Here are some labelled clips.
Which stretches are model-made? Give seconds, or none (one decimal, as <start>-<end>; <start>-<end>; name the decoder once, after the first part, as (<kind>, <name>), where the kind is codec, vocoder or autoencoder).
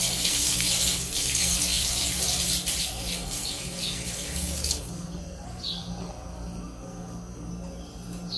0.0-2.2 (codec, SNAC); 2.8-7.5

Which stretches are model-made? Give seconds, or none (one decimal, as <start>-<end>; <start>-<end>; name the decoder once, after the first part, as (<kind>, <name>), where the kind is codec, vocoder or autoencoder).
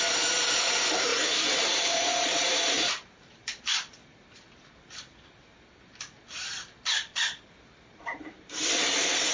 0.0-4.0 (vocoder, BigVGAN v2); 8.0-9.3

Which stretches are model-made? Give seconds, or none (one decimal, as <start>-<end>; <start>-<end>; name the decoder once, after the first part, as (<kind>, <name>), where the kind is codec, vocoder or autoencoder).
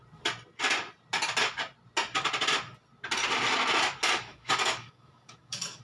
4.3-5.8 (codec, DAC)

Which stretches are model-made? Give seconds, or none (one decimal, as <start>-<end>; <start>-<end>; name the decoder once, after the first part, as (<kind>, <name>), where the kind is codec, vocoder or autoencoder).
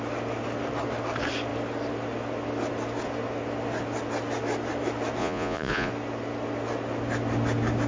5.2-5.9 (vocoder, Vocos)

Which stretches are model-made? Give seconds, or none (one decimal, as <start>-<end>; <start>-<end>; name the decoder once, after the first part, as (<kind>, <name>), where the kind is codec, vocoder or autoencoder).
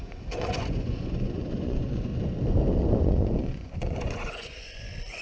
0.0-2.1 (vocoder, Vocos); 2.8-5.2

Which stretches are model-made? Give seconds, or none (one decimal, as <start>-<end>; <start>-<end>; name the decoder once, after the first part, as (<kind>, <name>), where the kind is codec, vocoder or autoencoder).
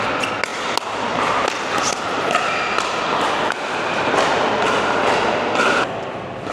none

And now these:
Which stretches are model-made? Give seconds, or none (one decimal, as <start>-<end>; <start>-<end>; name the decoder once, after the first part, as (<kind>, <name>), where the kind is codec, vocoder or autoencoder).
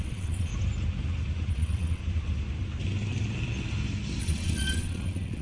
0.0-0.5 (vocoder, WaveNeXt); 1.5-2.0; 4.2-5.4